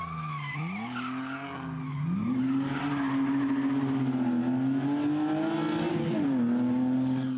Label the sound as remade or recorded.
recorded